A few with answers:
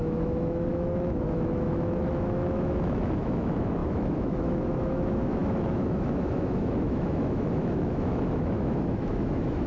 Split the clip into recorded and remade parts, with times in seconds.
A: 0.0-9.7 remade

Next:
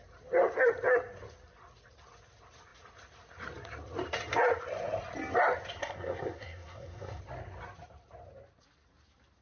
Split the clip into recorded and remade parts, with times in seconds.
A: 0.0-5.8 recorded; 5.8-7.2 remade; 7.2-9.4 recorded

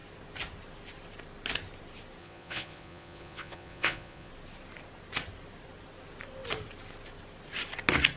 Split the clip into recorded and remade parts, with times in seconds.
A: 0.0-2.2 recorded; 2.2-4.3 remade; 4.3-8.2 recorded

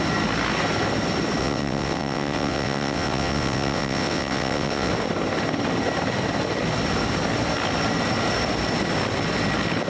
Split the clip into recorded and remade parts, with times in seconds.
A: 0.0-1.4 recorded; 1.4-4.9 remade; 4.9-9.9 recorded

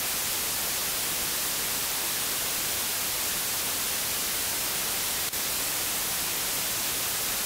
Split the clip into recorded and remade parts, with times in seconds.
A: 0.0-7.5 recorded

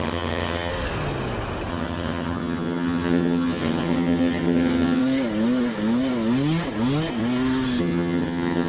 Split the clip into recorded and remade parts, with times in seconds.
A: 0.0-0.7 remade; 0.7-1.7 recorded; 1.7-5.0 remade; 5.0-7.8 recorded; 7.8-8.7 remade